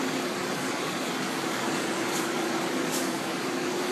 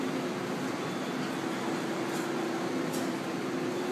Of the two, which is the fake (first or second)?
first